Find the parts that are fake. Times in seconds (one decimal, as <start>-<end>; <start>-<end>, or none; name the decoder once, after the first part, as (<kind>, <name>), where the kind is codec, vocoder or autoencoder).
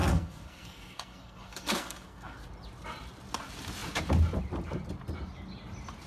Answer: 0.0-2.4 (codec, SNAC)